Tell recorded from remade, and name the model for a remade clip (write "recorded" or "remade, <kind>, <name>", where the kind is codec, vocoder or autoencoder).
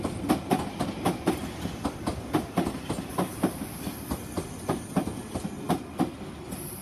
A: recorded